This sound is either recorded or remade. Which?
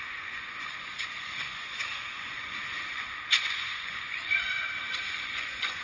remade